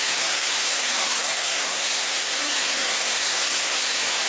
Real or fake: fake